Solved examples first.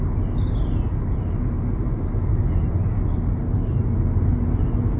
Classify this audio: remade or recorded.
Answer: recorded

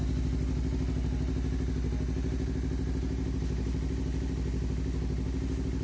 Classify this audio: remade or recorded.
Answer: recorded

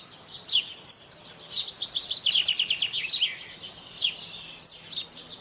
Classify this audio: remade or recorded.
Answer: recorded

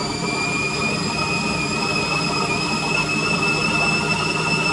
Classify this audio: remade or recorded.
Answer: recorded